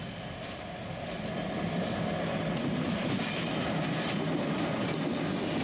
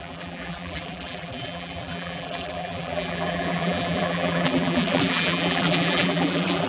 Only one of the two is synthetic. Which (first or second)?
second